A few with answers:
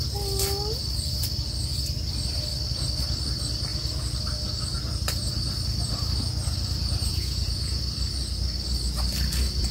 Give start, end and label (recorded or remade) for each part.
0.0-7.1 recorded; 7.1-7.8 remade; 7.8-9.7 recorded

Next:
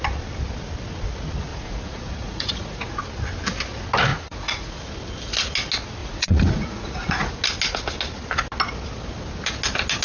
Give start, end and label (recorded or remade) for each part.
0.0-1.5 recorded; 1.5-3.0 remade; 3.0-4.1 recorded; 4.1-4.8 remade; 4.8-6.0 recorded; 6.0-7.3 remade; 7.3-10.0 recorded

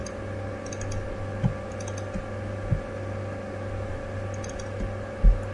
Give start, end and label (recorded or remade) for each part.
0.0-5.5 recorded

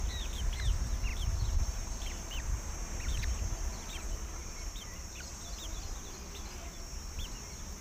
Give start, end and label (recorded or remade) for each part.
0.0-1.1 recorded; 1.1-2.7 remade; 2.7-4.4 recorded; 4.4-5.3 remade; 5.3-7.8 recorded

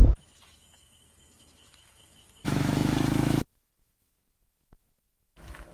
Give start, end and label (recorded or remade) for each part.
0.0-5.7 remade

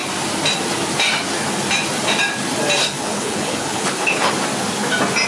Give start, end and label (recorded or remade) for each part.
0.0-2.8 recorded; 2.8-4.3 remade; 4.3-5.3 recorded

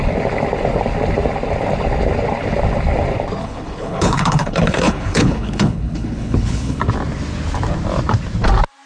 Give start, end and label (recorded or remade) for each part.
0.0-3.4 recorded; 3.4-6.8 remade; 6.8-8.9 recorded